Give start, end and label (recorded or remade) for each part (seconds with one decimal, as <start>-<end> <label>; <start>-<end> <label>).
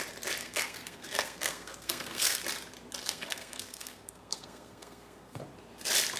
0.0-0.4 recorded; 0.4-2.4 remade; 2.4-3.0 recorded; 3.0-5.4 remade; 5.4-6.2 recorded